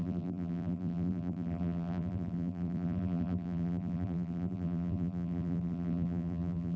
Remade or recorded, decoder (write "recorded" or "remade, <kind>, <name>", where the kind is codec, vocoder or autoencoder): remade, vocoder, BigVGAN v2